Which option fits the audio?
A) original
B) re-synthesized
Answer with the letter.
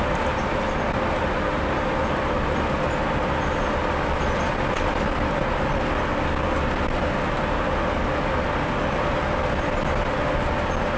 A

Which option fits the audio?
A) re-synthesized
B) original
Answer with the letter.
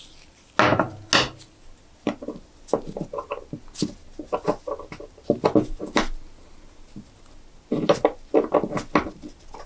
B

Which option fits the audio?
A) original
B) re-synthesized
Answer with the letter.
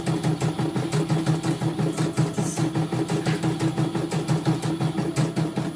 A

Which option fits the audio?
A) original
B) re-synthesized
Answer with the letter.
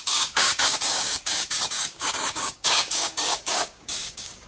B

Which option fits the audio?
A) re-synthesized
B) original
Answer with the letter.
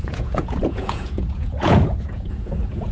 A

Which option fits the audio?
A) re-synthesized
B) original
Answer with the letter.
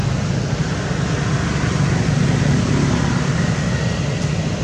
B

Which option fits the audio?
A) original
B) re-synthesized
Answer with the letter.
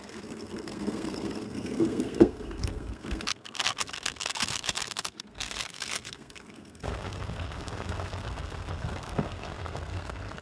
B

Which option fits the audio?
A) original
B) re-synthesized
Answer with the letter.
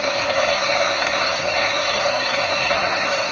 B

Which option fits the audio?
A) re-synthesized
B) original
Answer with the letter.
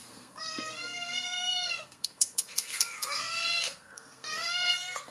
A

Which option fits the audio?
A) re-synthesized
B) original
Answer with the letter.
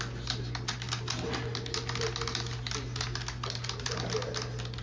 B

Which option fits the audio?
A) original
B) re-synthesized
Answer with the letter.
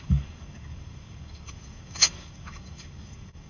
B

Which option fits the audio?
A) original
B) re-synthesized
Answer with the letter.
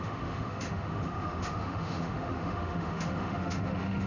B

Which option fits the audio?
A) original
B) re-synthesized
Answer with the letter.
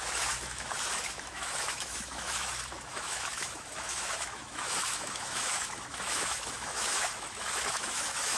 B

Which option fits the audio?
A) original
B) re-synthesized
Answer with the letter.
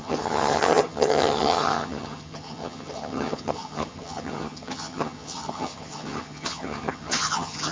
B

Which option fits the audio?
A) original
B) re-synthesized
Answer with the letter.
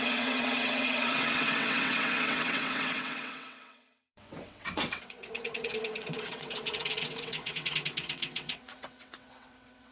B